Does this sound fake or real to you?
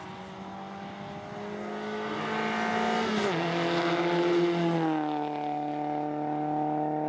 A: real